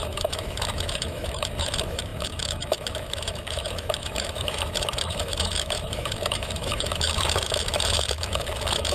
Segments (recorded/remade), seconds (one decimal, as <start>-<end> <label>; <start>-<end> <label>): 0.0-8.9 remade